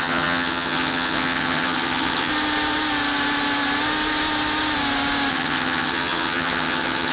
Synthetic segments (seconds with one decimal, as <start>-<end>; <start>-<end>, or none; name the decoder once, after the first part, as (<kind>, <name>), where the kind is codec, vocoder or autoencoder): 0.0-2.3 (vocoder, HiFi-GAN); 5.3-7.1